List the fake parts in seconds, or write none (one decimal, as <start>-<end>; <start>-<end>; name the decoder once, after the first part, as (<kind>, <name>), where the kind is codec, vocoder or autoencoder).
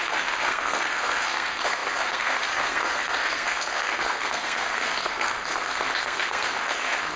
0.0-7.2 (codec, SNAC)